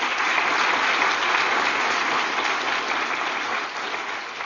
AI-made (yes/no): no